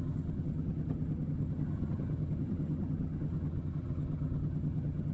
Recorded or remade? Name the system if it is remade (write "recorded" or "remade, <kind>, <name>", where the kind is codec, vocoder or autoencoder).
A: remade, vocoder, HiFi-GAN